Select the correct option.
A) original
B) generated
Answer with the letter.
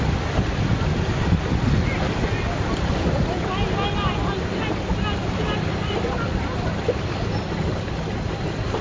A